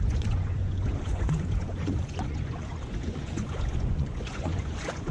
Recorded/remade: remade